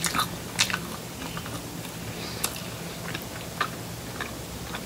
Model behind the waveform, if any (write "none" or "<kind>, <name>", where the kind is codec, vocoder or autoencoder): none